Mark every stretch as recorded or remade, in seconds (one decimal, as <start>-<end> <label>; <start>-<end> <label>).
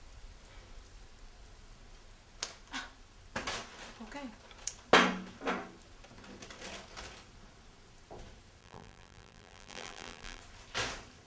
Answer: 0.0-8.6 recorded; 8.6-10.4 remade; 10.4-11.3 recorded